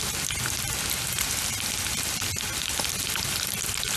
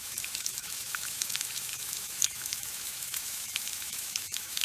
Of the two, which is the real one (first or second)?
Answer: first